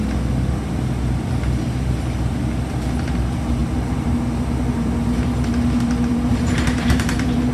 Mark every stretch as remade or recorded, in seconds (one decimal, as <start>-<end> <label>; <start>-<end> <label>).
0.0-3.6 recorded; 3.6-7.5 remade